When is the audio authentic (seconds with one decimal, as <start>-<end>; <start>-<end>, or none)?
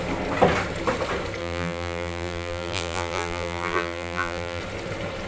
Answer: 0.0-1.4; 4.6-5.3